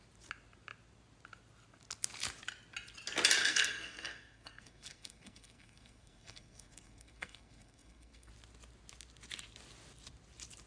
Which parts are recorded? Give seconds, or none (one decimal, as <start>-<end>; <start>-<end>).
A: 0.0-3.4; 8.3-10.7